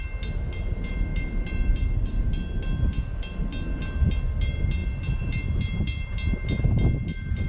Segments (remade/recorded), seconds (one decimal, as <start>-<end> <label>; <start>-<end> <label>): 0.0-7.5 recorded